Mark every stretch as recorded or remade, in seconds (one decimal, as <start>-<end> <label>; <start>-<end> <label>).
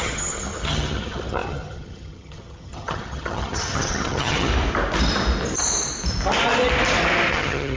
0.0-4.5 remade; 4.5-7.3 recorded; 7.3-7.8 remade